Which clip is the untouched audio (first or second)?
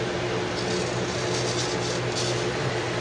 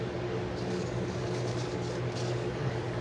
first